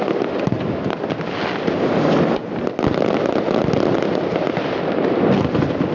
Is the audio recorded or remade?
remade